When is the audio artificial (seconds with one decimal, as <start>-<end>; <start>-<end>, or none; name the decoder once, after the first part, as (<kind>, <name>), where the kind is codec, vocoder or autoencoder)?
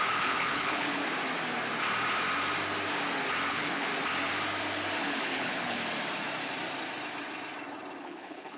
0.0-1.0 (codec, HILCodec); 3.5-3.9; 5.0-5.8; 8.0-8.6